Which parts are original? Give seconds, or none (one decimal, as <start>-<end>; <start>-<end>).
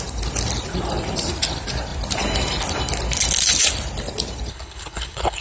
0.0-4.5